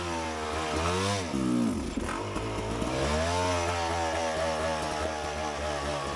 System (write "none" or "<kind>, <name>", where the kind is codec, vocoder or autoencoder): none